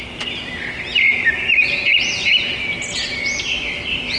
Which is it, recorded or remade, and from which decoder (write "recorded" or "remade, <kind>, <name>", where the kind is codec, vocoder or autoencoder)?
recorded